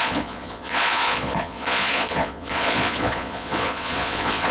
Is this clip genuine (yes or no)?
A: no